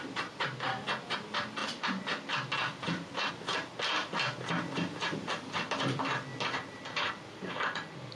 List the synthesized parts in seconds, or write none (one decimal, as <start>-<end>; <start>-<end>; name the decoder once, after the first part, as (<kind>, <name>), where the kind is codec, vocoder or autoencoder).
none